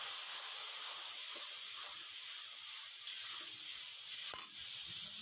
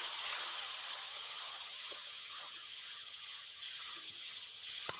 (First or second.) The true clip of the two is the first